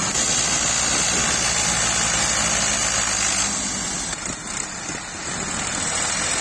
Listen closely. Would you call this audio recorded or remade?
recorded